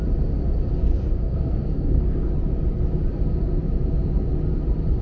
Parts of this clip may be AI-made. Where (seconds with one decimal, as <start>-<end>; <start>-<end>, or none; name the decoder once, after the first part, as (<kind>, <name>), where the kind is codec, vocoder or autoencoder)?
0.9-2.3 (codec, SNAC)